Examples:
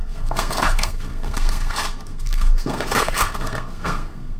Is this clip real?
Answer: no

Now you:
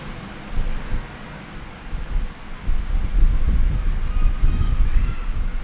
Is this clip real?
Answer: yes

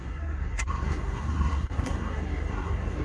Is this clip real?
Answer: no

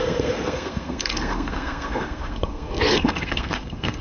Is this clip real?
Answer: no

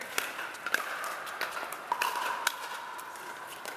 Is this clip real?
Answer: yes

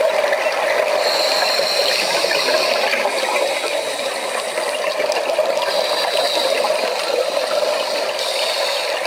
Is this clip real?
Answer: yes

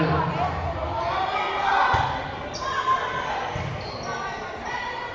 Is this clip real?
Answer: yes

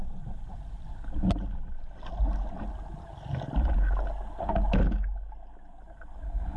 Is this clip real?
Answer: yes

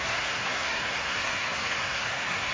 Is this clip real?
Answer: no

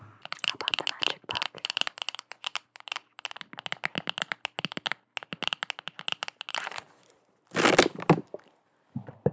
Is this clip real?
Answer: yes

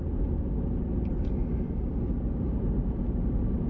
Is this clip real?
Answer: yes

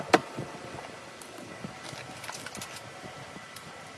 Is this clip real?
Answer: yes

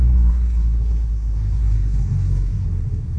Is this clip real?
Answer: no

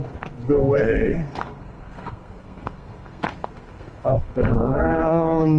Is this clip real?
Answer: no